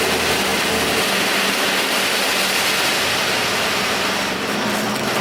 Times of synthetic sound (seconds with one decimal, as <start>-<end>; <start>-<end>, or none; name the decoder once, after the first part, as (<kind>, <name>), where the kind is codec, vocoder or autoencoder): none